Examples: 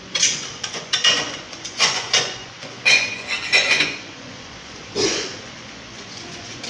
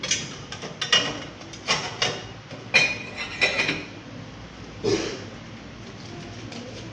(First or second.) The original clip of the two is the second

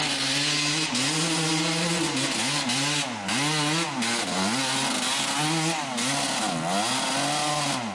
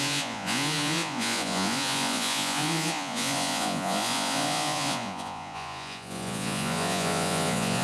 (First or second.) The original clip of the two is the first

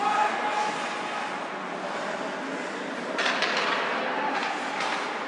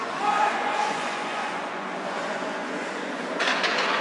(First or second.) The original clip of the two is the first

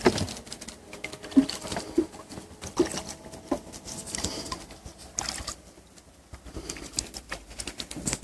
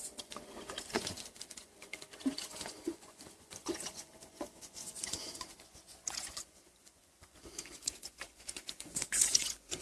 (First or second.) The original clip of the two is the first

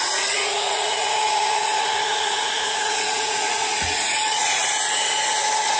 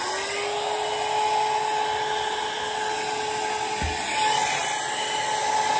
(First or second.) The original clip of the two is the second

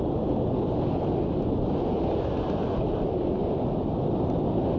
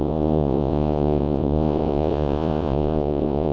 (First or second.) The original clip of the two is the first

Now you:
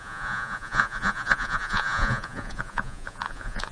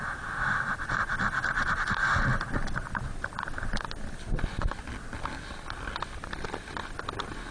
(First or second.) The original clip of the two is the second